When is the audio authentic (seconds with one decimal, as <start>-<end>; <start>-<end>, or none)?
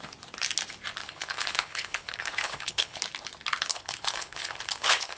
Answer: 0.0-1.0; 3.0-3.7